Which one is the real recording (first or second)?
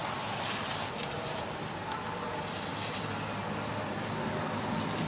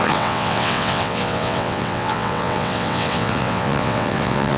first